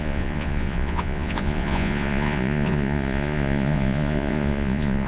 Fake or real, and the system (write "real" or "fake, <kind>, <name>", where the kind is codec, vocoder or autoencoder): fake, vocoder, Vocos